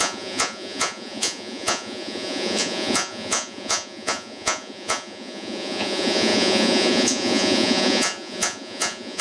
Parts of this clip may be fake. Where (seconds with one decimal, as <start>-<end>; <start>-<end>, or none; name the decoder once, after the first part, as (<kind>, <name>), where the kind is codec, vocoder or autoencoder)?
0.0-9.2 (vocoder, Vocos)